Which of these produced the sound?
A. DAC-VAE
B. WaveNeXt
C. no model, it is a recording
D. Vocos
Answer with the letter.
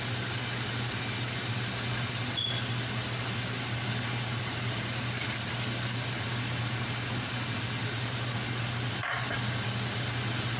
C